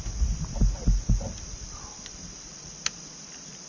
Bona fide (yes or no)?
yes